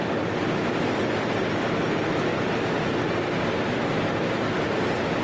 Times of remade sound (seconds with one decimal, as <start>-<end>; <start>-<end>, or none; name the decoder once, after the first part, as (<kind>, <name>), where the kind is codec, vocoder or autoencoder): 2.3-4.4 (vocoder, BigVGAN v2)